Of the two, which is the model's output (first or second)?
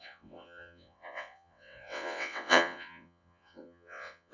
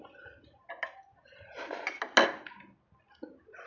first